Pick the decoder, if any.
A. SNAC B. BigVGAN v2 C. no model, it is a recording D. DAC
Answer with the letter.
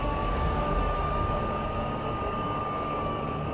D